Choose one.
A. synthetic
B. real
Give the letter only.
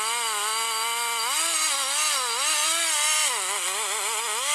B